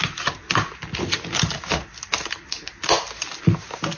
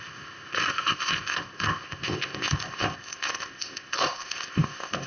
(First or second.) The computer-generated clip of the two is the second